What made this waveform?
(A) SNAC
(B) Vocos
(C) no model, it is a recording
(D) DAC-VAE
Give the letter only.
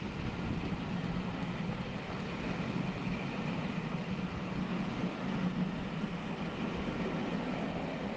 C